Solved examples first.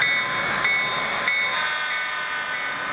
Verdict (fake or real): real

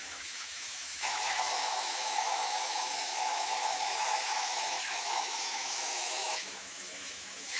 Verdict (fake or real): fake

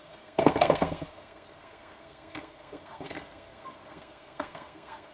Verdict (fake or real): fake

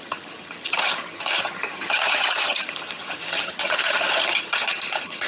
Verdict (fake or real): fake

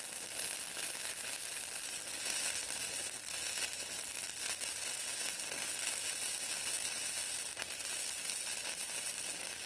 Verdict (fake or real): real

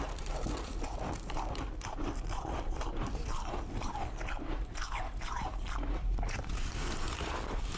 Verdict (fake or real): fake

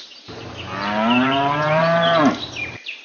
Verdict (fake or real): fake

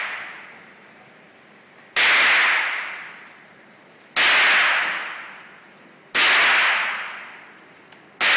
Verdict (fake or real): real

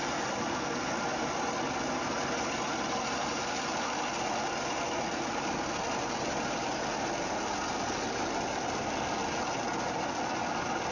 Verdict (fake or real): real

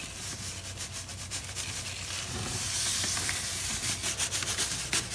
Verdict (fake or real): real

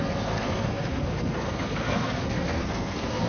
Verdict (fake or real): fake